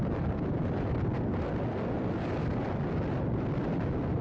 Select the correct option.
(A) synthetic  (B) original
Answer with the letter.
B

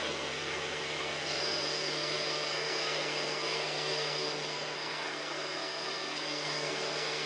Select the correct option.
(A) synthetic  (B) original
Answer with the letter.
A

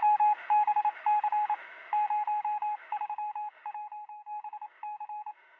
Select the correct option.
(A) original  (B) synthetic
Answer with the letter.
B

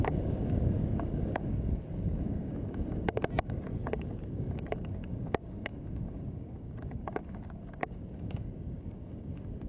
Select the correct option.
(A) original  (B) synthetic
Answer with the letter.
B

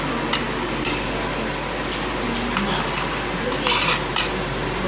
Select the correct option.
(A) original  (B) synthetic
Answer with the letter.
A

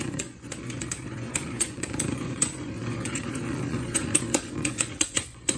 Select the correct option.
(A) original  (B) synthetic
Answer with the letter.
B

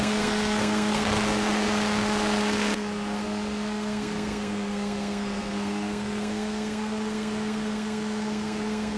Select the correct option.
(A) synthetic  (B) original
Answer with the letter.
A